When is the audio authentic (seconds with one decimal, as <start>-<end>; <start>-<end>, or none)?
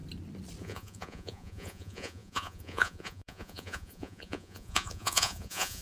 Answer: 0.0-0.6